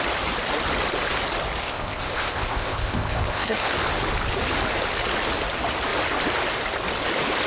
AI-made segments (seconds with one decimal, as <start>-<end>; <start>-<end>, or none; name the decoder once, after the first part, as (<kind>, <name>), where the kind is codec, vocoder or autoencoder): 1.6-3.7 (codec, ZipCodec)